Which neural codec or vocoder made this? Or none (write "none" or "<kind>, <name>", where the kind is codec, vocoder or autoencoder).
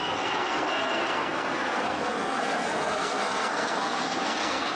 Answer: codec, SNAC